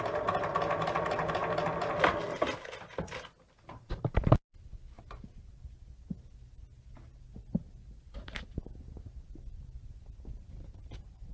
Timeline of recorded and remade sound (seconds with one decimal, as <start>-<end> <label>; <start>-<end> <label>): 0.0-11.3 recorded